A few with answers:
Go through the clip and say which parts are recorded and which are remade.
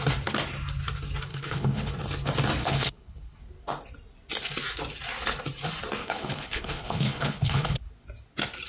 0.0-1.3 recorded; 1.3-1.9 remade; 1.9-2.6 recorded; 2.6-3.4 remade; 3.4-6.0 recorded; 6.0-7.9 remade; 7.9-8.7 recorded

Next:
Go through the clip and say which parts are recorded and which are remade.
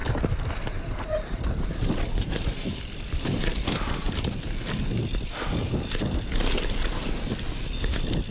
0.0-3.7 remade; 3.7-8.3 recorded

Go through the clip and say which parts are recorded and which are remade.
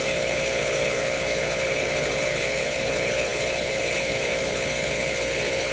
0.0-5.7 remade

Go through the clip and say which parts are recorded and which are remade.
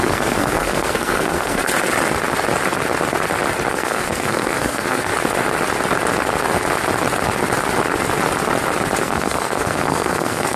0.0-1.7 remade; 1.7-3.7 recorded; 3.7-5.1 remade; 5.1-9.0 recorded; 9.0-10.6 remade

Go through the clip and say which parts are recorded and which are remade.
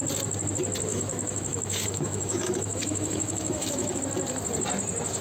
0.0-0.9 recorded; 0.9-4.0 remade; 4.0-5.2 recorded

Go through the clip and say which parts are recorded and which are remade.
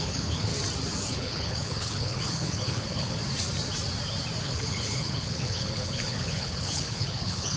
0.0-0.5 remade; 0.5-1.1 recorded; 1.1-3.2 remade; 3.2-4.4 recorded; 4.4-7.6 remade